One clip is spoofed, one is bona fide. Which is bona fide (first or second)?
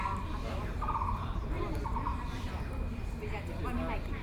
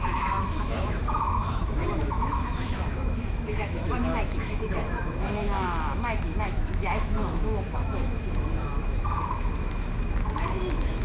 first